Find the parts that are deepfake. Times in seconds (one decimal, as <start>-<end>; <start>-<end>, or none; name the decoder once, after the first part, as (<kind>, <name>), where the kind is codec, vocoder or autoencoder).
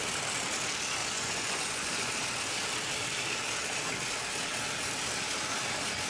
1.0-2.1 (vocoder, Vocos)